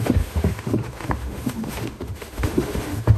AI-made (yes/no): yes